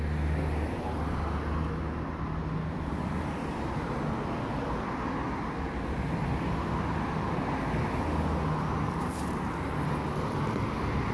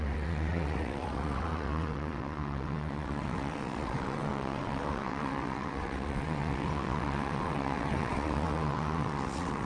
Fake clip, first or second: second